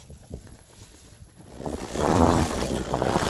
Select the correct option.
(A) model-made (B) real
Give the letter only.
A